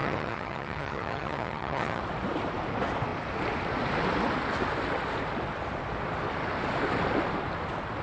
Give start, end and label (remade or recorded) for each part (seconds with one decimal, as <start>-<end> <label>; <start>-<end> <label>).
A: 0.0-2.0 remade; 2.0-8.0 recorded